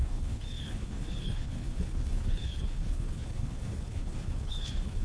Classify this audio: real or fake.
fake